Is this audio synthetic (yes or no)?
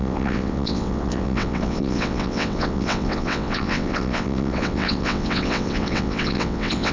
yes